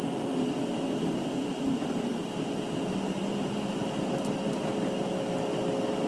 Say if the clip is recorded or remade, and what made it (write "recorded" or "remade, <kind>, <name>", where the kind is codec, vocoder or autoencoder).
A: recorded